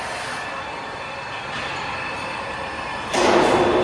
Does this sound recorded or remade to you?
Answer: recorded